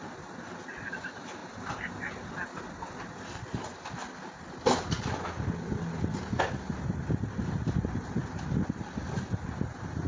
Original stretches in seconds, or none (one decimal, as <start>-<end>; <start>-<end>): 0.0-10.1